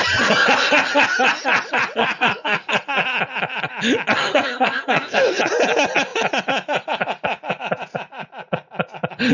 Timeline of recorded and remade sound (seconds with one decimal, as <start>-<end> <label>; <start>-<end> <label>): 0.0-2.0 recorded; 2.0-2.7 remade; 2.7-4.2 recorded; 4.2-5.4 remade; 5.4-9.3 recorded